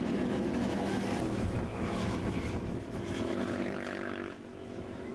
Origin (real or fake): fake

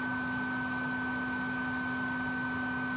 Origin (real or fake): real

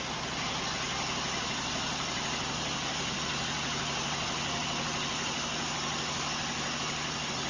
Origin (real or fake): real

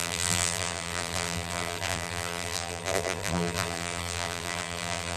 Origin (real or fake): fake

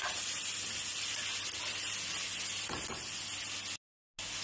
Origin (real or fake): real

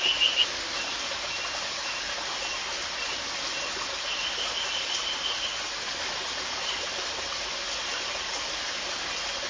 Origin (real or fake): real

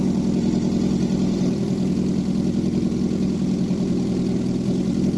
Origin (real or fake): real